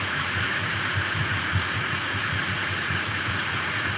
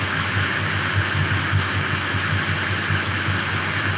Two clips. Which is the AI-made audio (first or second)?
first